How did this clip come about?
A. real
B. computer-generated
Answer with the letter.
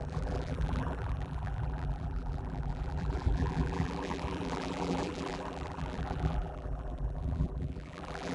B